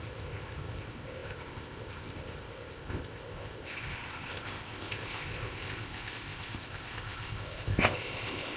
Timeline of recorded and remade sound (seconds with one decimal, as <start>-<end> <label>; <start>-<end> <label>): 0.0-8.6 remade